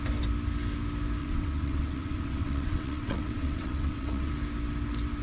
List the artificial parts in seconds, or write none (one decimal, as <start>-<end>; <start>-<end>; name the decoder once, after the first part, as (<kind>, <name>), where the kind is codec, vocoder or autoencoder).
1.2-4.3 (vocoder, WaveNeXt)